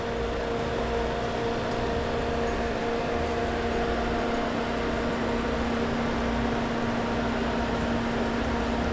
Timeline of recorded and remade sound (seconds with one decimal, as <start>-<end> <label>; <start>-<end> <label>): 0.0-8.9 recorded